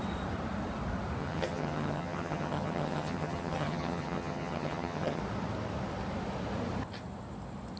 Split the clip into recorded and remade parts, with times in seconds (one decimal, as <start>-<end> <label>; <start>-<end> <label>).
0.0-1.2 recorded; 1.2-5.2 remade; 5.2-7.8 recorded